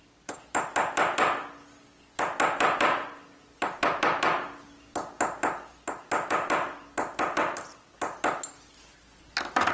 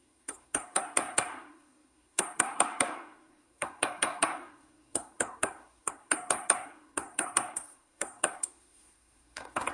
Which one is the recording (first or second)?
first